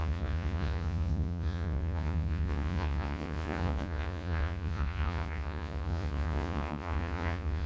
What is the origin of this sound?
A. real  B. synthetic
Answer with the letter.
B